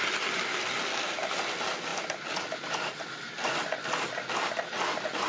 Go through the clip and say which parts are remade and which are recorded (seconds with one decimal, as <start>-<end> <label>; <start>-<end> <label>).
0.0-5.3 recorded